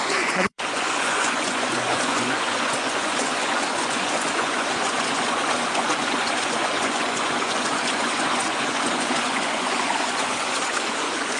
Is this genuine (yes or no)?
no